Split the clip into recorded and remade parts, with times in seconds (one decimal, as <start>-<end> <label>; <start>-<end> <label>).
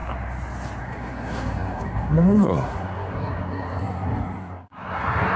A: 0.0-0.8 recorded; 0.8-5.4 remade